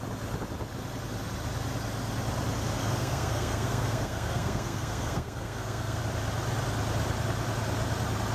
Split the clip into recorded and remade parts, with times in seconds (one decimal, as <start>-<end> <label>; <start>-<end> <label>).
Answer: 0.0-2.8 recorded; 2.8-6.0 remade; 6.0-8.3 recorded